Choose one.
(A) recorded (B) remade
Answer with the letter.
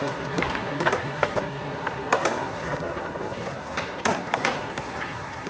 B